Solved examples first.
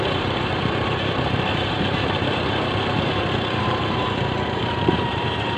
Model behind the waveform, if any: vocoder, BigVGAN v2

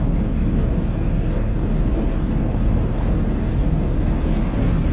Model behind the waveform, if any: codec, DAC